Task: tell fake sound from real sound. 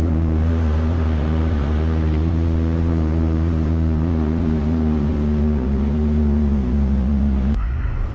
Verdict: fake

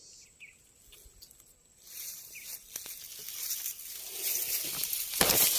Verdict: real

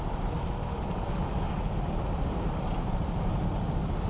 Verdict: real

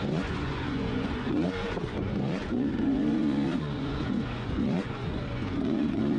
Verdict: fake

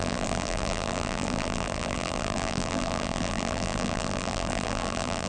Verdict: fake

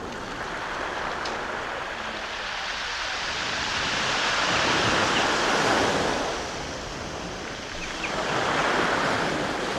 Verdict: real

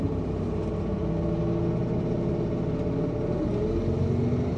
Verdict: real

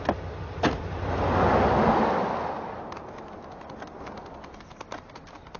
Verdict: real